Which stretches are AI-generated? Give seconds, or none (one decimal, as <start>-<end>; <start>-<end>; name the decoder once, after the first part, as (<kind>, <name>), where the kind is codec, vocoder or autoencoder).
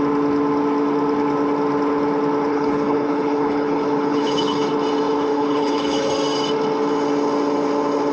2.5-4.7 (codec, HILCodec); 5.3-6.1